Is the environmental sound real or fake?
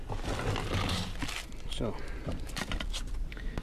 real